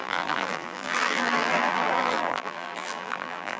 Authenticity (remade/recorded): remade